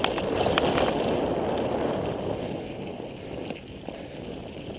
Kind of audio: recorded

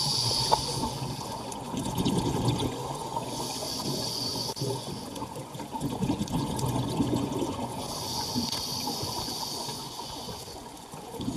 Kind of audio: remade